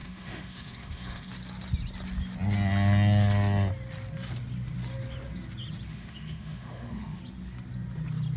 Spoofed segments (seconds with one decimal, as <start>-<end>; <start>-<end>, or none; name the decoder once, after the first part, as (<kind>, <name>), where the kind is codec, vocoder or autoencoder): 0.0-1.3 (autoencoder, DAC-VAE); 5.9-7.2